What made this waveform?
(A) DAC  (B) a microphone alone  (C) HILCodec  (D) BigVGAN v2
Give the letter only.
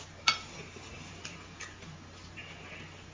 B